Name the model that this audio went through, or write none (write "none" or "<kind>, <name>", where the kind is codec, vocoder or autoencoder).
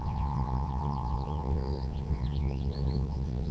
vocoder, WaveNeXt